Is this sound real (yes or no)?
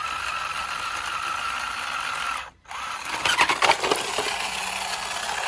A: yes